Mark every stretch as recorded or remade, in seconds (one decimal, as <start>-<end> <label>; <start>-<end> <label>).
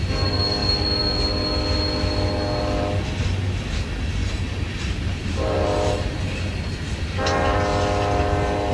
0.0-4.2 recorded; 4.2-6.4 remade; 6.4-8.7 recorded